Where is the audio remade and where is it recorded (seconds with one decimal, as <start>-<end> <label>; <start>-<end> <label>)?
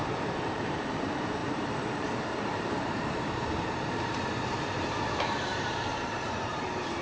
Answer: 0.0-7.0 remade